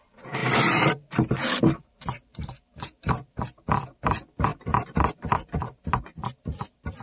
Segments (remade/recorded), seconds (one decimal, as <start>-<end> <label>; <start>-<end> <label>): 0.0-0.4 recorded; 0.4-3.4 remade; 3.4-7.0 recorded